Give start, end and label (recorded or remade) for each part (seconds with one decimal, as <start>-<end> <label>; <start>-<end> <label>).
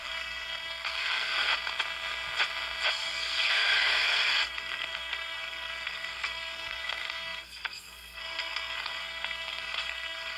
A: 0.0-1.5 remade; 1.5-2.9 recorded; 2.9-10.4 remade